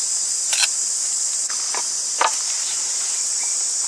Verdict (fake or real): real